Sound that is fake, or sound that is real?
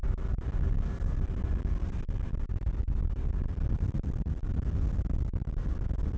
real